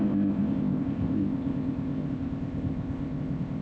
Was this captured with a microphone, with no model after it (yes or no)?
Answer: no